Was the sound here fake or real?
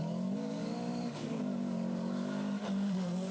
fake